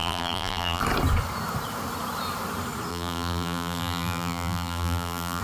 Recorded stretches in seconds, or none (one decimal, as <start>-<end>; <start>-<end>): 0.8-2.9

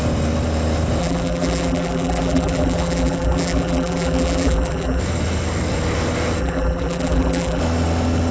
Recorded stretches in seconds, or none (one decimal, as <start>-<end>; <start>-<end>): 0.0-1.0; 5.0-6.4; 7.6-8.3